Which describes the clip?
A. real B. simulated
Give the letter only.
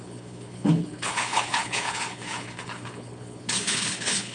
B